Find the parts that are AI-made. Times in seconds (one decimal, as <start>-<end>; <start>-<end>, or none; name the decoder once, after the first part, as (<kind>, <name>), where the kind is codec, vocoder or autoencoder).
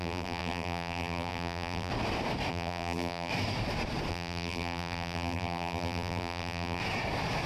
0.0-1.9 (vocoder, BigVGAN v2); 2.5-3.3; 4.1-6.8